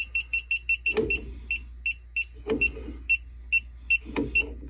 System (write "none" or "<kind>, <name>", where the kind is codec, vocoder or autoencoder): none